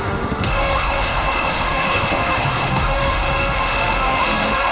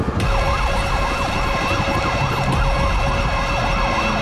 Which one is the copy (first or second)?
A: first